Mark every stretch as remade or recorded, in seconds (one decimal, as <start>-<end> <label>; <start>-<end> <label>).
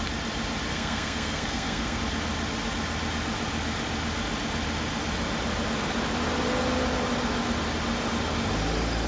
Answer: 0.0-0.7 recorded; 0.7-2.0 remade; 2.0-9.1 recorded